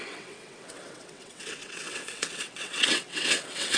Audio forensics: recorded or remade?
remade